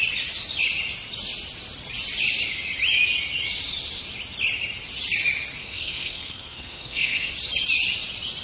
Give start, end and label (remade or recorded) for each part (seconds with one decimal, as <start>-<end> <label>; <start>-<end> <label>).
0.0-5.6 recorded; 5.6-7.3 remade; 7.3-8.4 recorded